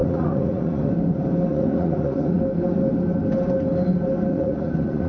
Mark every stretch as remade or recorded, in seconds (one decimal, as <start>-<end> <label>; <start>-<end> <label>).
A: 0.0-0.9 remade; 0.9-1.5 recorded; 1.5-2.4 remade; 2.4-4.3 recorded; 4.3-5.1 remade